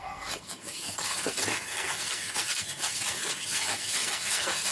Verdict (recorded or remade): remade